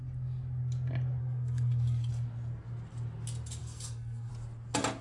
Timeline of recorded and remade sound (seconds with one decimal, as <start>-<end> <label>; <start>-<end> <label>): 0.0-1.2 recorded; 1.2-2.1 remade; 2.1-3.6 recorded; 3.6-4.3 remade; 4.3-5.0 recorded